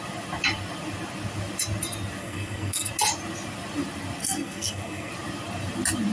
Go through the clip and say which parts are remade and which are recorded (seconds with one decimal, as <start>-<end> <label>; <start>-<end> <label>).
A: 0.0-2.2 recorded; 2.2-2.9 remade; 2.9-4.2 recorded; 4.2-5.1 remade; 5.1-6.1 recorded